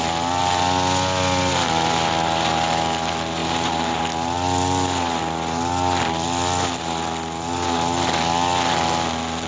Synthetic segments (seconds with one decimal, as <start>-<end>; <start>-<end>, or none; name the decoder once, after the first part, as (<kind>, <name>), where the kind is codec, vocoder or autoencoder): 3.4-4.0 (vocoder, BigVGAN v2)